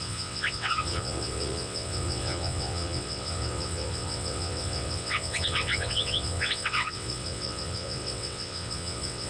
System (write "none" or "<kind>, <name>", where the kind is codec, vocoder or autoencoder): vocoder, WaveNeXt